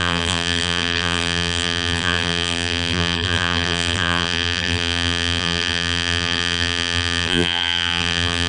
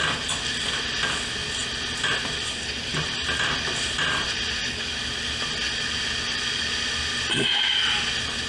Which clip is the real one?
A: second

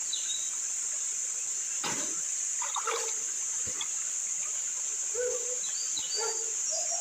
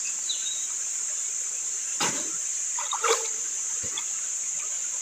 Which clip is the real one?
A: first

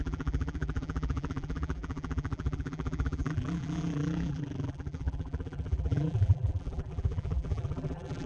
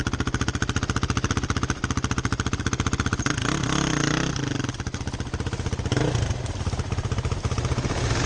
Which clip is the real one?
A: second